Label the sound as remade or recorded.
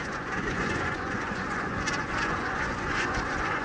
remade